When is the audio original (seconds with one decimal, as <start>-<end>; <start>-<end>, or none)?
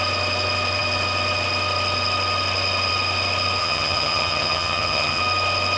0.0-3.6; 5.2-5.8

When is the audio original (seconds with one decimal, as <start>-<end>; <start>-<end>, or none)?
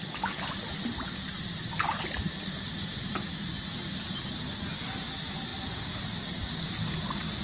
0.0-7.4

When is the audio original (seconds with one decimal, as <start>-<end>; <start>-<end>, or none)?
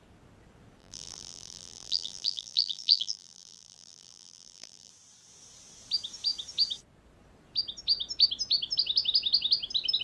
0.0-0.8; 4.9-10.0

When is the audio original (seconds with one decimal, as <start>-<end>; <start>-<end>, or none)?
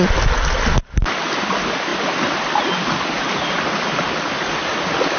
0.0-5.2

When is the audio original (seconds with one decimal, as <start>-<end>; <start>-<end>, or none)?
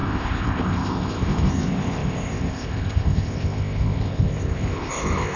none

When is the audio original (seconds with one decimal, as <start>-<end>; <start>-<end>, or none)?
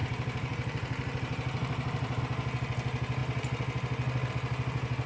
2.2-5.1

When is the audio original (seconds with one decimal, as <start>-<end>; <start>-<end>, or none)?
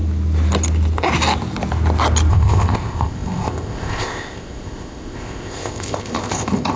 0.0-2.3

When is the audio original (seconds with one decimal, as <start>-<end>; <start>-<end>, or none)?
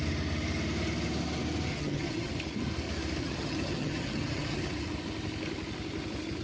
0.0-1.7; 2.3-3.2; 4.7-6.4